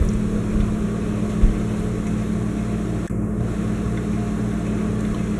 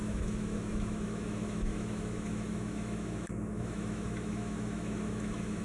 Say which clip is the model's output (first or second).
second